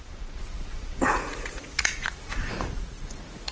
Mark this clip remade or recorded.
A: remade